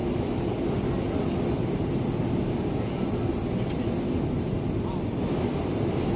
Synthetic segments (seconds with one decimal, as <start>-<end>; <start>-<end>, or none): none